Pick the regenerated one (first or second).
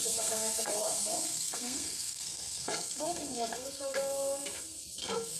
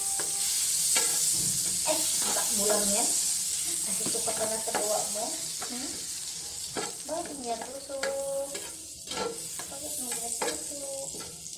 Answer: first